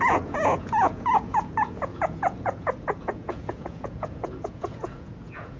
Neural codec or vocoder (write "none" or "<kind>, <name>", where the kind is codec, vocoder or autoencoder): vocoder, Vocos